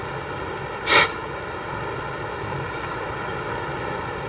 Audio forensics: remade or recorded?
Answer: recorded